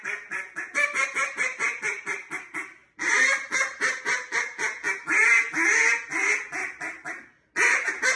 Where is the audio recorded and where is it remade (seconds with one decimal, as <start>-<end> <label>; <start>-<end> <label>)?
0.0-8.2 recorded